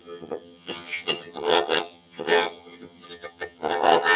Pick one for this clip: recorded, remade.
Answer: remade